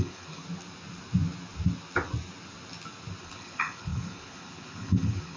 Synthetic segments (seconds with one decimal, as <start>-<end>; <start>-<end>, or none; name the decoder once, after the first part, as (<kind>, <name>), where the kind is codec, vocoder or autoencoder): 0.0-0.4 (codec, HILCodec); 3.2-5.4